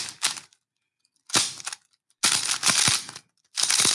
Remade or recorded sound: recorded